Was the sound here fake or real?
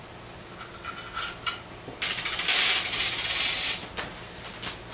real